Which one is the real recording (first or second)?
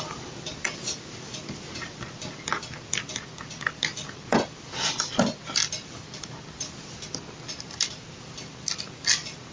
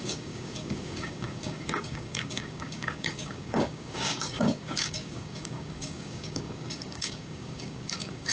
first